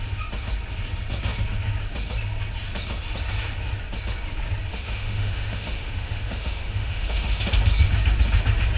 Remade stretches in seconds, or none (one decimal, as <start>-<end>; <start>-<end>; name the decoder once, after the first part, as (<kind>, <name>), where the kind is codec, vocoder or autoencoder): 4.7-7.4 (autoencoder, DAC-VAE)

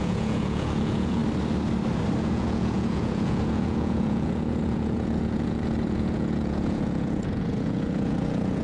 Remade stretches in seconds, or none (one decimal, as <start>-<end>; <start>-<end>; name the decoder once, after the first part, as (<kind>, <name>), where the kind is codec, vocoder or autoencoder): 0.0-1.2 (vocoder, Vocos); 2.2-8.6

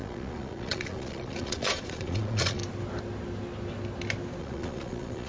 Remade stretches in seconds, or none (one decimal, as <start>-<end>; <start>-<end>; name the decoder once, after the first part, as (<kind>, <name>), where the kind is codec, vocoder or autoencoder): 0.0-2.6 (vocoder, Vocos); 4.4-5.3

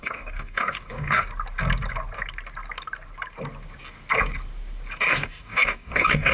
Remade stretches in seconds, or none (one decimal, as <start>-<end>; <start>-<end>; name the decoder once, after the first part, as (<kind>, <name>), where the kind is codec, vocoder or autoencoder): 0.0-1.3 (codec, DAC); 5.1-6.3

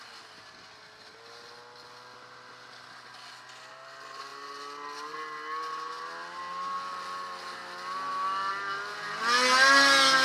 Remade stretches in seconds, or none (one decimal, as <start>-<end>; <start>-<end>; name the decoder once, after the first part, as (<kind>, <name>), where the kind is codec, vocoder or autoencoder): none